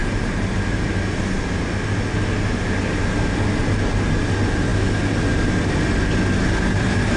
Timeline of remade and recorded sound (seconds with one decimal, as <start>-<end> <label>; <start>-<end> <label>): 0.0-7.2 recorded